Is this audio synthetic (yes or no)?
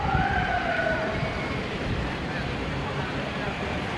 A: yes